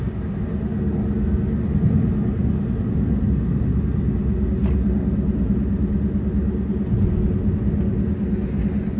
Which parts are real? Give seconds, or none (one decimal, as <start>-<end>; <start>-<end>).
0.0-9.0